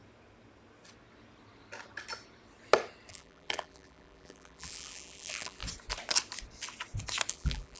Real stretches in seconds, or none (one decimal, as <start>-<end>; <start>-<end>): 0.0-3.1; 5.6-7.3